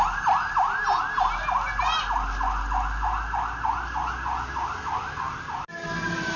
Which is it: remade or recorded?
recorded